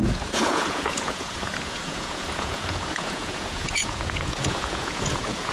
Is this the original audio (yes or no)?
no